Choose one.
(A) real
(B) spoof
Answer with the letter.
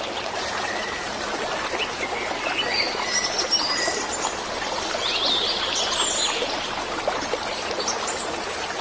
A